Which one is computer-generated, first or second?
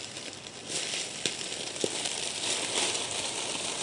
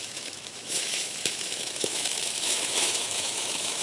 second